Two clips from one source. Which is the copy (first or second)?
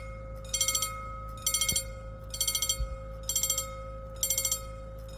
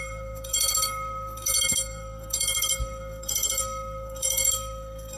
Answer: second